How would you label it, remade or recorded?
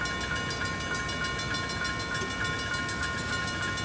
recorded